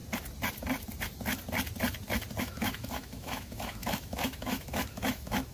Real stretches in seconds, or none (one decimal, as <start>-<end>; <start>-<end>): 0.0-2.4